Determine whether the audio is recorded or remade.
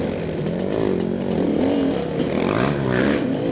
recorded